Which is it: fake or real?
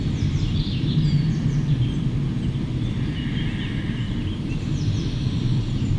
real